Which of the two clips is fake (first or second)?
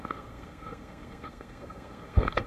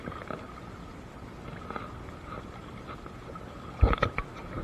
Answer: first